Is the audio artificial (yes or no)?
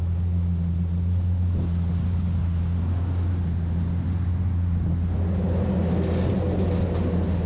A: no